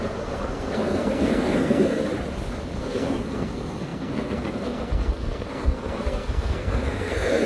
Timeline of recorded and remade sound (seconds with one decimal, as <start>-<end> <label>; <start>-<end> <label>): 0.0-2.0 remade; 2.0-2.8 recorded; 2.8-7.5 remade